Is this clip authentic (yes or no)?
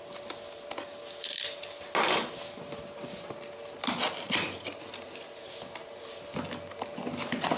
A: yes